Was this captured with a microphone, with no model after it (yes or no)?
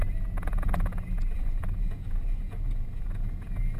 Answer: no